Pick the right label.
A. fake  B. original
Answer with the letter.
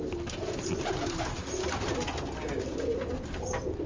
B